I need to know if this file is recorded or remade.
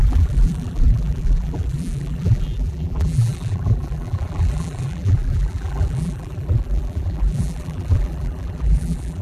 remade